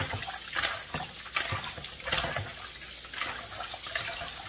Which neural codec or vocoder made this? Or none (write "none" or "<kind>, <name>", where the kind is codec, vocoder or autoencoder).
none